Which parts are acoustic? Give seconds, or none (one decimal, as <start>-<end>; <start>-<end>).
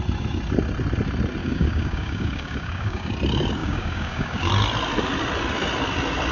0.0-1.4; 3.1-3.6; 4.5-6.3